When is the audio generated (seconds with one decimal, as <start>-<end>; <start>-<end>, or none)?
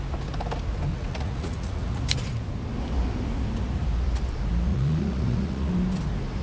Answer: 0.9-2.0; 4.7-5.7